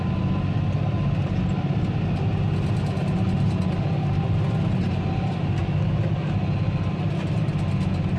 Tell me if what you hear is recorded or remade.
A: recorded